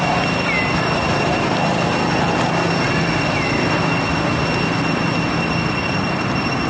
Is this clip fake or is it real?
real